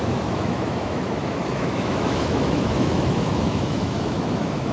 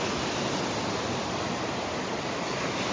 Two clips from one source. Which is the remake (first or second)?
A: first